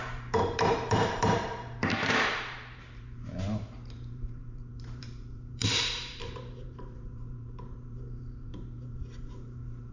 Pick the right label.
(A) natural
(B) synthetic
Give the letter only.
B